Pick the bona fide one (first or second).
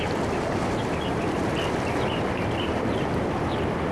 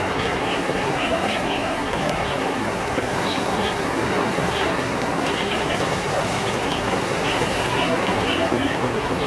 first